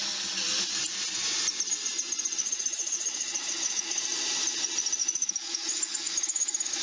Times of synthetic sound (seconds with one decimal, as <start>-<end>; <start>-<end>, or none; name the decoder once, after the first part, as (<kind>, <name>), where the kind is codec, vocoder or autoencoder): 2.4-4.0 (autoencoder, DAC-VAE); 5.0-6.8